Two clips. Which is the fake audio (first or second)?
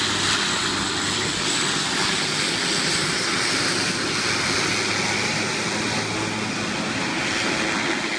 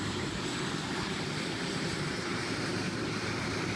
second